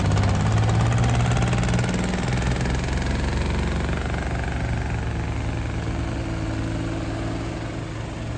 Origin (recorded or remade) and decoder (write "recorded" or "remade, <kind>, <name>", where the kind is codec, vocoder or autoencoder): recorded